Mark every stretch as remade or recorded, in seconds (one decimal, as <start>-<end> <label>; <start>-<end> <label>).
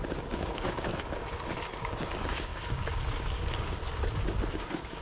0.0-0.9 remade; 0.9-1.8 recorded; 1.8-3.8 remade; 3.8-4.5 recorded; 4.5-5.0 remade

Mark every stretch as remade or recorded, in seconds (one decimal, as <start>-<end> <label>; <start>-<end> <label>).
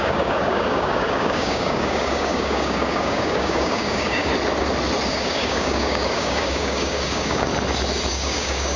0.0-4.3 remade; 4.3-5.1 recorded; 5.1-7.5 remade; 7.5-8.1 recorded; 8.1-8.8 remade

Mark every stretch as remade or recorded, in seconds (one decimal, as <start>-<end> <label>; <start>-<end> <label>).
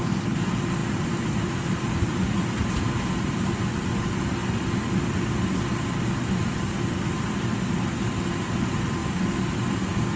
0.0-0.8 recorded; 0.8-1.8 remade; 1.8-10.2 recorded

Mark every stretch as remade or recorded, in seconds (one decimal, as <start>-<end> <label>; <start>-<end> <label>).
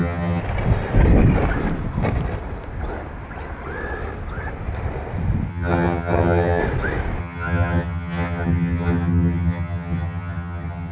0.0-0.4 remade; 0.4-5.5 recorded; 5.5-6.6 remade; 6.6-7.2 recorded; 7.2-10.9 remade